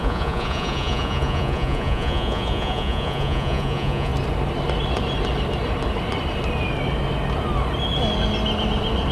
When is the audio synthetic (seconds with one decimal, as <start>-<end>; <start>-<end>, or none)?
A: 0.0-4.1